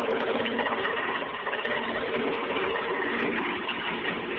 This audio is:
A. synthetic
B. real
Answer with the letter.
A